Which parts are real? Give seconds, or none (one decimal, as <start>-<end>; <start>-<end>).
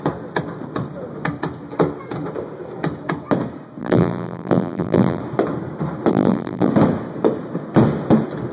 0.0-3.8; 5.2-6.1; 6.7-8.5